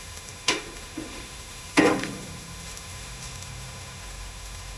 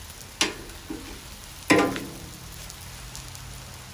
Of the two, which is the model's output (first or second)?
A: first